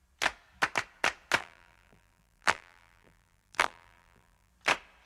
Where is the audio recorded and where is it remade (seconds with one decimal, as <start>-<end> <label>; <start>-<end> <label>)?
0.0-1.4 recorded; 1.4-4.5 remade; 4.5-5.1 recorded